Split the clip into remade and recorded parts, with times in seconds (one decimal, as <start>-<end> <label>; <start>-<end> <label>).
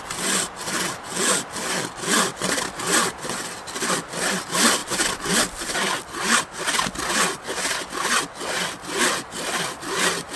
0.0-10.4 recorded